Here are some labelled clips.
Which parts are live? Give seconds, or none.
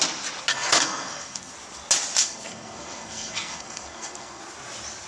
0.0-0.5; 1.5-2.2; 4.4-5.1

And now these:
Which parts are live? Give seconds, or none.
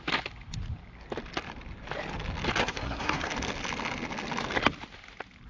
0.0-2.6; 3.3-5.5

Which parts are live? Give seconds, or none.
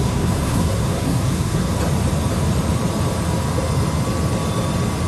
1.7-5.1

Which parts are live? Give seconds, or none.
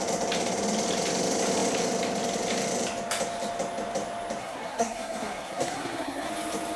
0.0-4.4; 6.3-6.8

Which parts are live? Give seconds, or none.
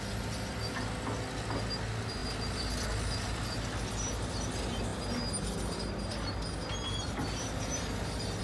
0.0-8.4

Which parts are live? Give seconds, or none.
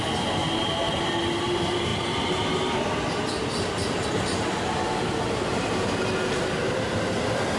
0.0-7.6